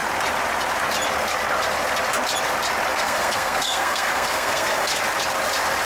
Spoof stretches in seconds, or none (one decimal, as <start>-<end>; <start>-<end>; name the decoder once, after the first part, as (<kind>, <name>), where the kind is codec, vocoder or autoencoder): 2.9-5.0 (codec, SNAC)